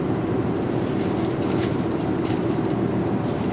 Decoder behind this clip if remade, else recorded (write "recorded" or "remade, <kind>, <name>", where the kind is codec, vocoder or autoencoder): remade, vocoder, BigVGAN v2